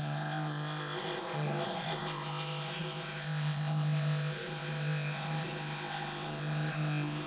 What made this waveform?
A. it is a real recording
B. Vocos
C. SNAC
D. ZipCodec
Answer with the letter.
D